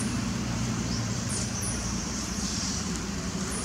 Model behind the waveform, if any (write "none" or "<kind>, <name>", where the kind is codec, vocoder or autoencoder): vocoder, BigVGAN v2